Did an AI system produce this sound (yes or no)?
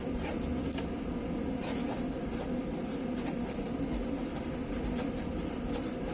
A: no